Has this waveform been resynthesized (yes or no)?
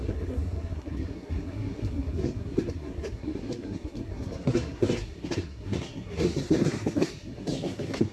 yes